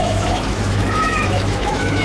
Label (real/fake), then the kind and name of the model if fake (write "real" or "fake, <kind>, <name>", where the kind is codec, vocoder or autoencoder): fake, autoencoder, DAC-VAE